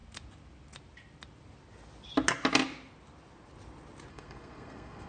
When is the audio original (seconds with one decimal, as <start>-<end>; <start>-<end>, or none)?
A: 0.0-4.1